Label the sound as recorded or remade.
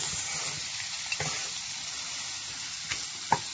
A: recorded